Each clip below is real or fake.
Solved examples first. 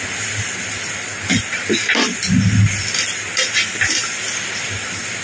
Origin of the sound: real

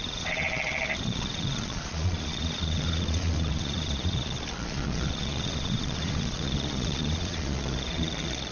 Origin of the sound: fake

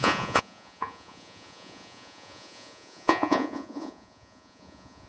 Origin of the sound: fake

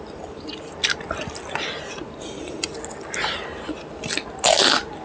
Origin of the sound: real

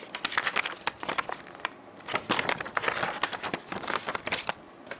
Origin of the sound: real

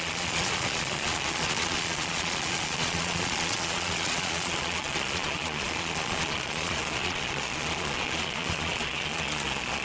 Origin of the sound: fake